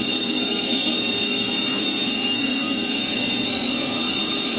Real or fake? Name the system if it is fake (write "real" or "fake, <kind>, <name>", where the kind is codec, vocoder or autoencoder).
fake, codec, SNAC